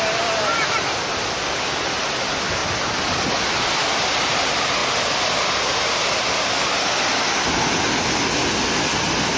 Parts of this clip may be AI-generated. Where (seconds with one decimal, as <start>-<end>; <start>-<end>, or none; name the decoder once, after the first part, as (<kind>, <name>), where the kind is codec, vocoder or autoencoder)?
none